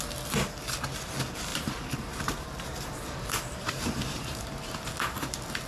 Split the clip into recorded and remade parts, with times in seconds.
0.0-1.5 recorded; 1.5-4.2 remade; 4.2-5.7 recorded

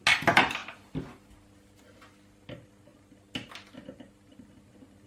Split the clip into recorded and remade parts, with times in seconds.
0.0-5.1 recorded